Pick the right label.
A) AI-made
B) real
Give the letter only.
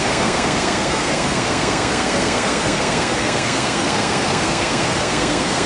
A